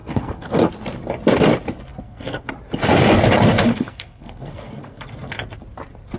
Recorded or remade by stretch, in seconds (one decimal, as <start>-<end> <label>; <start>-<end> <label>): 0.0-0.7 remade; 0.7-1.9 recorded; 1.9-2.5 remade; 2.5-3.7 recorded; 3.7-5.0 remade; 5.0-6.2 recorded